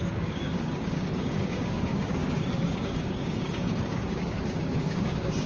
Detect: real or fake fake